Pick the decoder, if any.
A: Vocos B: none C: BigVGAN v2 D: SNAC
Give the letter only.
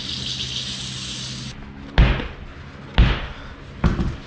B